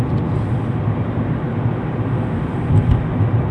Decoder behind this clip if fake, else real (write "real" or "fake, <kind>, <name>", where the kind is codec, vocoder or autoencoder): real